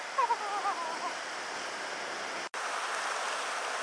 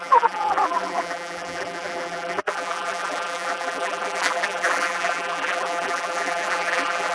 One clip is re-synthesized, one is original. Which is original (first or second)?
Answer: first